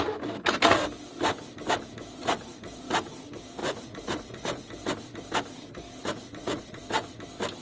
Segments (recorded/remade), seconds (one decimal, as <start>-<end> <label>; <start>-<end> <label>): 0.0-3.6 recorded; 3.6-4.7 remade; 4.7-6.0 recorded; 6.0-6.8 remade; 6.8-7.6 recorded